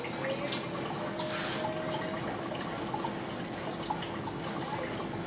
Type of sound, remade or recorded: recorded